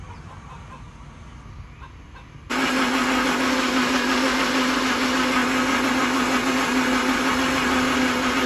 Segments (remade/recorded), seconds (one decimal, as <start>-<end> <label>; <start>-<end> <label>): 0.0-8.5 recorded